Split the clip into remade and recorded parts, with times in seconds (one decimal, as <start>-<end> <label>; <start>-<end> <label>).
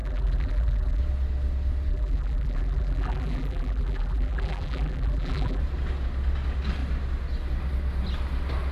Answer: 0.0-1.0 remade; 1.0-1.9 recorded; 1.9-5.6 remade; 5.6-8.7 recorded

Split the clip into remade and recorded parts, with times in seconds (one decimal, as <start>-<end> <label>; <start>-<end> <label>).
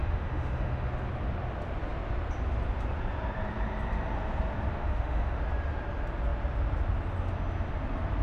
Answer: 0.0-0.9 remade; 0.9-4.7 recorded; 4.7-5.4 remade; 5.4-8.2 recorded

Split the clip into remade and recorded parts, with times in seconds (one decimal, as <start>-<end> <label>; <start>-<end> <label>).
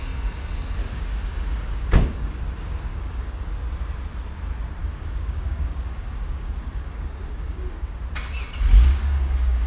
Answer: 0.0-0.8 recorded; 0.8-2.4 remade; 2.4-2.9 recorded; 2.9-3.5 remade; 3.5-4.8 recorded; 4.8-8.0 remade; 8.0-8.9 recorded; 8.9-9.7 remade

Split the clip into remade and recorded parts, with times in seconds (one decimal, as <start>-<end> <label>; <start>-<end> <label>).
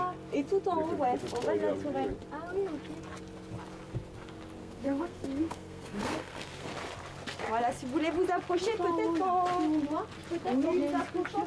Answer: 0.0-4.6 recorded; 4.6-6.7 remade; 6.7-11.5 recorded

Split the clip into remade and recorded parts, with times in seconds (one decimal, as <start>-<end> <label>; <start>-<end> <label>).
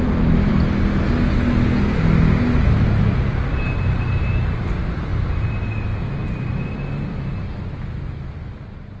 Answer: 0.0-9.0 recorded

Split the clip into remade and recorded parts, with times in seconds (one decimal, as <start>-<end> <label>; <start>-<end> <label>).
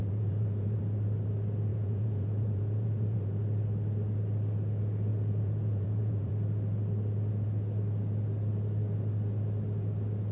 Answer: 0.0-0.8 remade; 0.8-1.7 recorded; 1.7-3.4 remade; 3.4-5.1 recorded; 5.1-6.3 remade; 6.3-10.3 recorded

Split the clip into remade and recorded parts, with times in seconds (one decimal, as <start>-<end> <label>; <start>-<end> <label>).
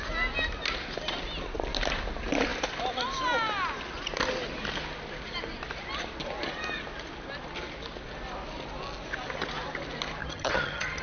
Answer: 0.0-10.2 recorded; 10.2-11.0 remade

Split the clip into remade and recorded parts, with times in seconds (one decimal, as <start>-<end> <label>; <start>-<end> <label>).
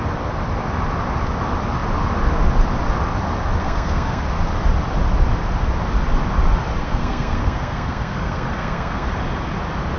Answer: 0.0-3.6 recorded; 3.6-4.2 remade; 4.2-6.8 recorded; 6.8-9.1 remade; 9.1-10.0 recorded